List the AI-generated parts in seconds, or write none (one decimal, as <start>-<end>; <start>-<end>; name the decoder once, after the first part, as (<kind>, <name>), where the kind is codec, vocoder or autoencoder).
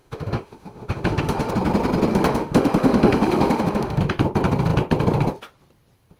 0.0-1.5 (autoencoder, DAC-VAE); 2.1-4.0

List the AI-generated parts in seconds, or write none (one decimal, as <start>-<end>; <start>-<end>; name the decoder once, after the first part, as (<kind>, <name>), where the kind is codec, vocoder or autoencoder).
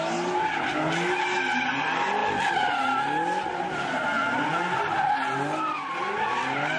none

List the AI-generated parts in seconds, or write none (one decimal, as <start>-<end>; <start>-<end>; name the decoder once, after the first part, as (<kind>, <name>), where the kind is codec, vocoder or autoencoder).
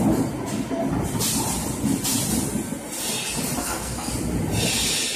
3.6-4.1 (codec, SNAC)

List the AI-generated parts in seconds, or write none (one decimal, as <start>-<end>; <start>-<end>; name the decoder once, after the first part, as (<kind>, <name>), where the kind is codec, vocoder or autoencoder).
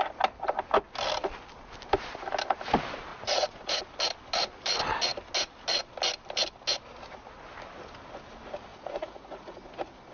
3.1-3.8 (vocoder, Vocos); 8.7-9.6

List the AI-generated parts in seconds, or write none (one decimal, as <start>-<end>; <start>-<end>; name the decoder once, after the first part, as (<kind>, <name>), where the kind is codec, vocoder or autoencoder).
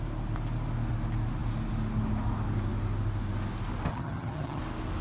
3.9-4.6 (vocoder, HiFi-GAN)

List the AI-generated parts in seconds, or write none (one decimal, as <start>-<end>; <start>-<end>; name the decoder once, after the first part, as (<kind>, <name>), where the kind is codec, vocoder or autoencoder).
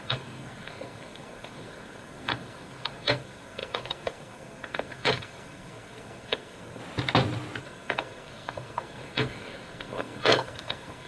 0.0-6.8 (codec, SNAC); 7.6-11.1